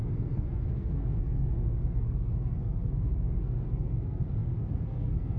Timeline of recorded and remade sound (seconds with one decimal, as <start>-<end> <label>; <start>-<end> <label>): 0.0-5.4 remade